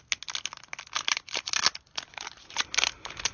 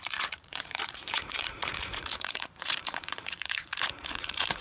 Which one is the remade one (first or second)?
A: second